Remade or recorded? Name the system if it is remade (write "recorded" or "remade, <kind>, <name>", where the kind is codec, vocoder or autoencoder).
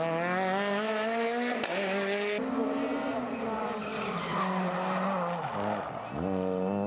recorded